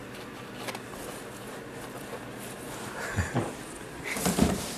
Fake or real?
real